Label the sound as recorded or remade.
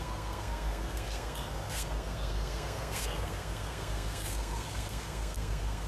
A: remade